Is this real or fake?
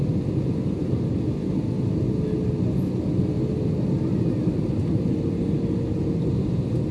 real